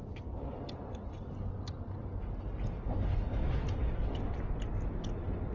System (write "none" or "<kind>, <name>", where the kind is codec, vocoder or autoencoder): none